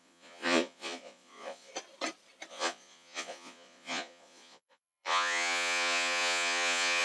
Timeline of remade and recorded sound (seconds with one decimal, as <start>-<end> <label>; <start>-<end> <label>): 0.0-1.7 remade; 1.7-2.5 recorded; 2.5-7.0 remade

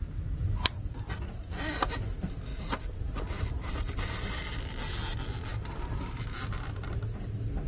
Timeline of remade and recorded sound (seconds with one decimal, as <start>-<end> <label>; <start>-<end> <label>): 0.0-2.5 recorded; 2.5-4.4 remade; 4.4-5.5 recorded; 5.5-6.8 remade; 6.8-7.7 recorded